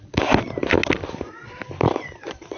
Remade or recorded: recorded